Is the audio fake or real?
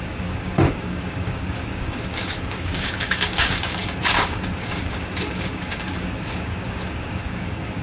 fake